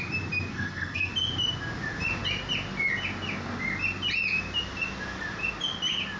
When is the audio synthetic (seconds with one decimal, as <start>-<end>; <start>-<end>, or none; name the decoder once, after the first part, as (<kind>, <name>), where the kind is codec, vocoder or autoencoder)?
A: 0.5-1.1 (codec, SNAC)